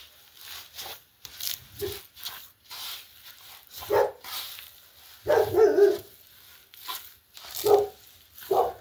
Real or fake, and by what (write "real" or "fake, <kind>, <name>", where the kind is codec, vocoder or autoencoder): real